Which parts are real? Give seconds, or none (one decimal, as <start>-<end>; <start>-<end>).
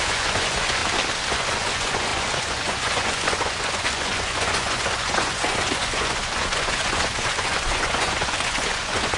0.8-1.3